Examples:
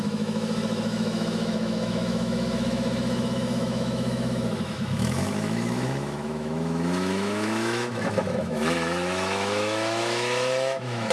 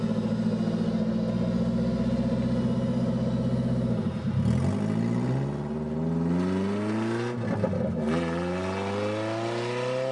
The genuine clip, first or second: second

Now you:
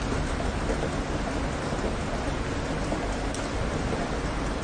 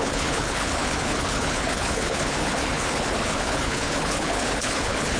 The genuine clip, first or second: first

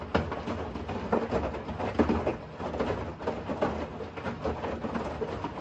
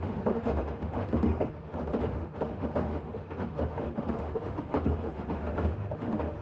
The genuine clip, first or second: first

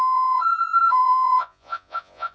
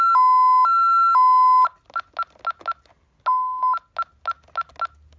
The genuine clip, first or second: second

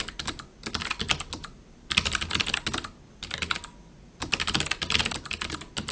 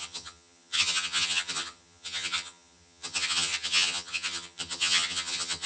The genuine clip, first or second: first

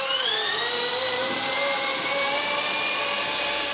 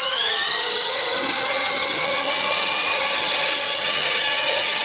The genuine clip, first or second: first